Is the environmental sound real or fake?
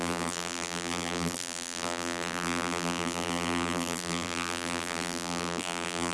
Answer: fake